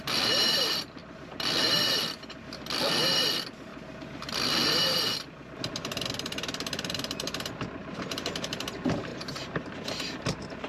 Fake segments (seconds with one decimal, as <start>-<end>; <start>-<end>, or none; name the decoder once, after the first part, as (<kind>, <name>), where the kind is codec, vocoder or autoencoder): 7.8-8.3 (vocoder, BigVGAN v2); 9.1-9.7